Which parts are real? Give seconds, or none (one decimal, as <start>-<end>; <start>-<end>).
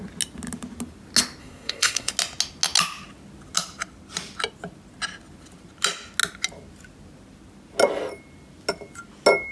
0.0-1.4; 2.1-9.5